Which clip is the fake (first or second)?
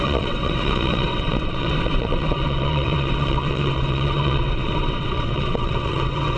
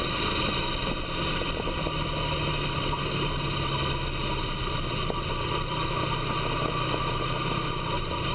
first